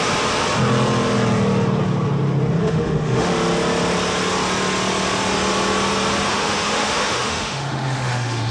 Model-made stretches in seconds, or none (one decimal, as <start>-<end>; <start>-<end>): 2.6-3.3; 6.3-8.5